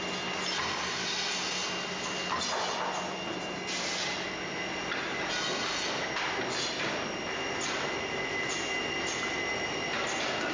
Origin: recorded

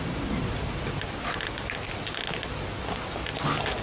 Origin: recorded